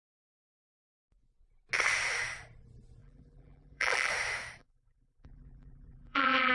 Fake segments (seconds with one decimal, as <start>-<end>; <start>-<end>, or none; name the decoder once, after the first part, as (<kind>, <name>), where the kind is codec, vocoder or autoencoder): 3.0-4.1 (vocoder, BigVGAN v2); 4.6-6.5